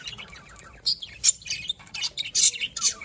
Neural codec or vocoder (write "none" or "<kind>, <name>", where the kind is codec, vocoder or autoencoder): vocoder, BigVGAN v2